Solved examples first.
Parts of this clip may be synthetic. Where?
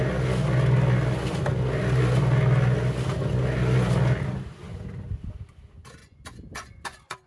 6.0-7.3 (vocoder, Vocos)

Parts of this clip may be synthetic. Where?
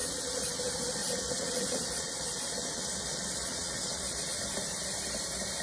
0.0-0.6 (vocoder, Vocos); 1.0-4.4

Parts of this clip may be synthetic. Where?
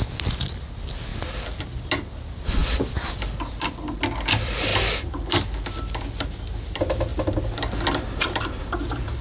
none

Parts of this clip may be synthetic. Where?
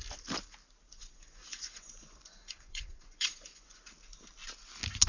0.9-3.8 (vocoder, Vocos)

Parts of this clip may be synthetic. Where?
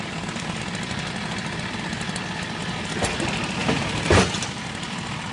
none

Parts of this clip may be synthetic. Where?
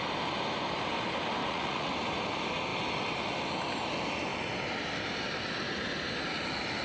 1.4-1.9 (vocoder, Vocos)